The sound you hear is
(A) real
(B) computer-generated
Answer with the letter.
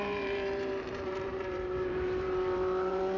B